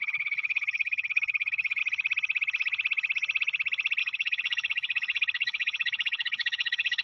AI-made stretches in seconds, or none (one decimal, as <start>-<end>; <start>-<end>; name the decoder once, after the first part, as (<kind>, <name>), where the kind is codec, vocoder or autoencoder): 0.0-1.8 (codec, HILCodec); 4.0-7.0

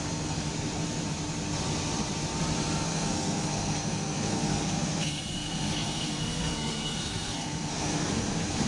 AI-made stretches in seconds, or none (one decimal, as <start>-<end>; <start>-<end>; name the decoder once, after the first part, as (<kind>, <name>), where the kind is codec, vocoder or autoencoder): 0.0-0.5 (codec, SNAC); 2.8-8.7

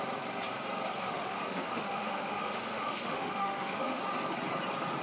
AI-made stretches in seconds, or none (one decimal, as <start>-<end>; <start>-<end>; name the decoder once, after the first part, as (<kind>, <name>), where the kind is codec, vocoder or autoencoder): 1.0-4.0 (autoencoder, DAC-VAE)

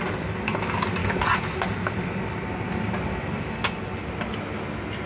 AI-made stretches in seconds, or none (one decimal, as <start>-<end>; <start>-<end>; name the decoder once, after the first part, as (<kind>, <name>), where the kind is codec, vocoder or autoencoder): none

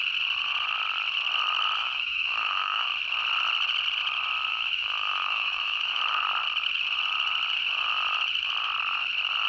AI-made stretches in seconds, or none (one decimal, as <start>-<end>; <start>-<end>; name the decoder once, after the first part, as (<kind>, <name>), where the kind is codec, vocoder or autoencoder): 1.8-2.9 (autoencoder, DAC-VAE); 4.5-6.0

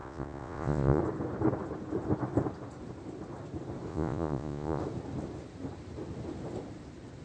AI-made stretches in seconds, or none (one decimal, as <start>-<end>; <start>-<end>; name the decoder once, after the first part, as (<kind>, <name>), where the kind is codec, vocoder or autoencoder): 0.0-1.0 (vocoder, Vocos); 3.9-4.8

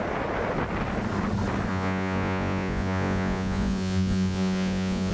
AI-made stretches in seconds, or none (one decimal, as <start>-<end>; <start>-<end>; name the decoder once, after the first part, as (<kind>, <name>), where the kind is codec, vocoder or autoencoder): 1.7-5.1 (vocoder, Vocos)